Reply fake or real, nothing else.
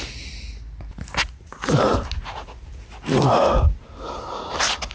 real